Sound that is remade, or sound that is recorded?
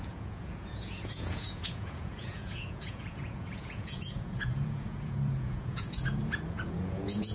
remade